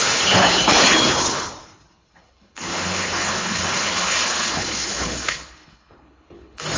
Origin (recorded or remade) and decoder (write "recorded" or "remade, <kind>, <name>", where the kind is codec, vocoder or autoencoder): remade, codec, HILCodec